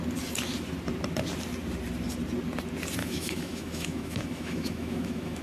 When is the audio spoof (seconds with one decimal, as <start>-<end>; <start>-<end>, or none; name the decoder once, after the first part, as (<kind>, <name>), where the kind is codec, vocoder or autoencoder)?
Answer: 3.0-5.4 (autoencoder, DAC-VAE)